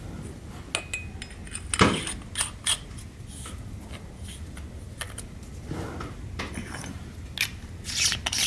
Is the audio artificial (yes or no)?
no